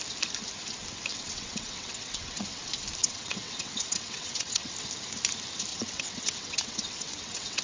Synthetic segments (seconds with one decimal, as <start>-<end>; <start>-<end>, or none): 1.1-2.6; 3.0-4.7; 5.7-7.6